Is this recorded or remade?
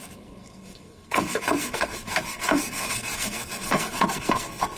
remade